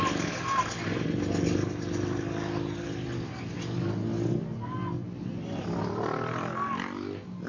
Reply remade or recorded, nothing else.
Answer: recorded